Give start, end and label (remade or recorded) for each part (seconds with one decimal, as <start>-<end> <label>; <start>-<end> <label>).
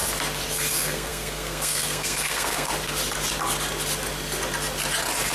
0.0-0.5 recorded; 0.5-2.7 remade; 2.7-5.3 recorded